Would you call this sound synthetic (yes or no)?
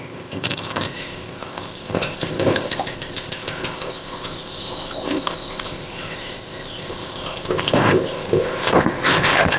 yes